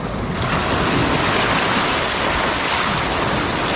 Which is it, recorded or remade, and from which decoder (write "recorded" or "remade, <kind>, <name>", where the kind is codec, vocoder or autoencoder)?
recorded